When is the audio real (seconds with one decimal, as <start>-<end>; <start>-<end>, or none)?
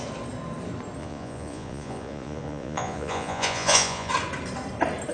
0.0-1.0; 4.1-5.1